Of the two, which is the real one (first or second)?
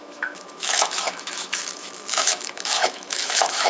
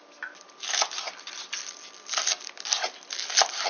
second